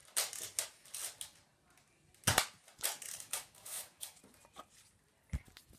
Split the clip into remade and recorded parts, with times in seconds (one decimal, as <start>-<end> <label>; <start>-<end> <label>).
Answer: 0.0-3.1 recorded; 3.1-4.2 remade; 4.2-5.8 recorded